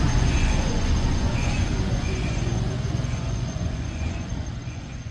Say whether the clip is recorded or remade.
remade